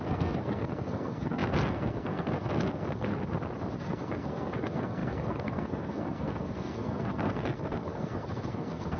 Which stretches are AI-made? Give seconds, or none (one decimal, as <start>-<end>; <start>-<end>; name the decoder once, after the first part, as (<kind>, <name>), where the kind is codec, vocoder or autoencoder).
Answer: 0.0-3.1 (codec, SNAC); 3.8-9.0